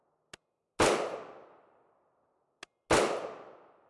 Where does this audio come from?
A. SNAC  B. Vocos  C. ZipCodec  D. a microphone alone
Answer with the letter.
D